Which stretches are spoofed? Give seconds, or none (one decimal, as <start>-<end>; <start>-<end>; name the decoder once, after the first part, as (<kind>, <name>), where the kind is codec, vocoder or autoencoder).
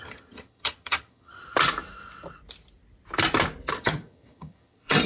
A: 0.0-1.4 (vocoder, HiFi-GAN); 3.7-5.1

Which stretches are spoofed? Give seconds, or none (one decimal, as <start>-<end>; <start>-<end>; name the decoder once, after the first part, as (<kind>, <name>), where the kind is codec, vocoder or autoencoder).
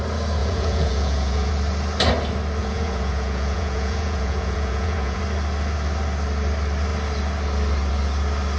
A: 0.4-1.5 (vocoder, Vocos); 2.6-5.2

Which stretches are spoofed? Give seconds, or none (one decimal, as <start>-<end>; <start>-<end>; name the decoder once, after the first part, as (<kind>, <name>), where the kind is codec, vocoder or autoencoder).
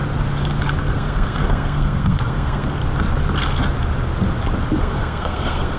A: 0.8-2.8 (codec, SNAC); 4.8-5.8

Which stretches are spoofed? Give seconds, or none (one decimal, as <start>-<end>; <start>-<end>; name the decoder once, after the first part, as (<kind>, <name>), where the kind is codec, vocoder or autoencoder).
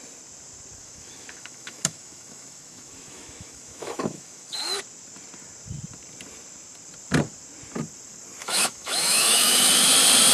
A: 0.8-4.8 (autoencoder, DAC-VAE); 8.4-9.7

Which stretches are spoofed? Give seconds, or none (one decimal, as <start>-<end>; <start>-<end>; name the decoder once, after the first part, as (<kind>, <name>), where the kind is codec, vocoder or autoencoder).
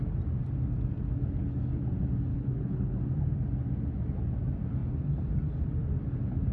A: 2.3-3.0 (codec, HILCodec)